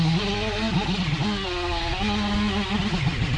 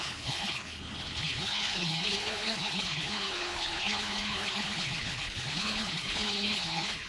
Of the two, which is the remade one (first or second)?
second